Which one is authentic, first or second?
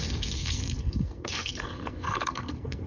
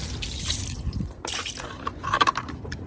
second